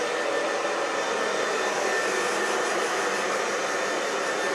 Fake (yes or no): no